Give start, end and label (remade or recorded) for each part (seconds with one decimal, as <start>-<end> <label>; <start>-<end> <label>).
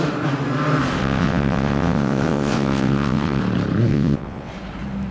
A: 0.0-1.0 recorded; 1.0-3.4 remade; 3.4-3.9 recorded; 3.9-4.5 remade; 4.5-5.1 recorded